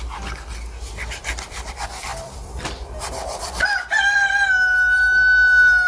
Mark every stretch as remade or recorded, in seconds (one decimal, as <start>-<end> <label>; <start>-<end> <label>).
0.0-1.2 recorded; 1.2-1.7 remade; 1.7-2.1 recorded; 2.1-3.0 remade; 3.0-5.9 recorded